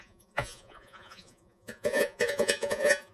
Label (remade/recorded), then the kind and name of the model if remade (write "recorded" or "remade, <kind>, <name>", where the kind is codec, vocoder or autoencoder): remade, vocoder, Vocos